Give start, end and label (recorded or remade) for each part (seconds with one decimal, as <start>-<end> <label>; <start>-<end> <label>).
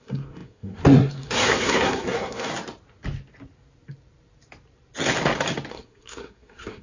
0.0-2.5 remade; 2.5-5.7 recorded; 5.7-6.8 remade